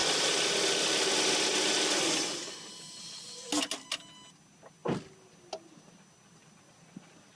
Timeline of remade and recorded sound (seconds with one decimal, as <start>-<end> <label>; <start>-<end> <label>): 0.0-7.4 recorded